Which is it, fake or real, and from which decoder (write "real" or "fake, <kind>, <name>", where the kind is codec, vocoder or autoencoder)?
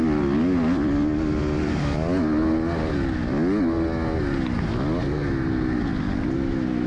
real